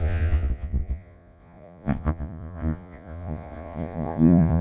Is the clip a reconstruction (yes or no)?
yes